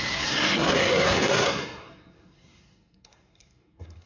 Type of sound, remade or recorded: remade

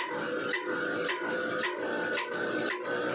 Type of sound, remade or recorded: recorded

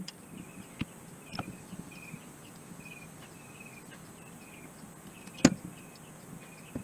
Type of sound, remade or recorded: recorded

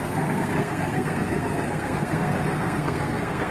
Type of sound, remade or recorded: remade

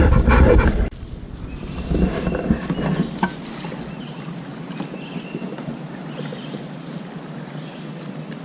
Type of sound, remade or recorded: recorded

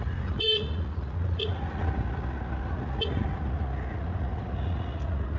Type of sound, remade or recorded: remade